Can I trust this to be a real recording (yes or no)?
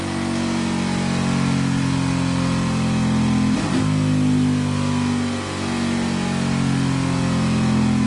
yes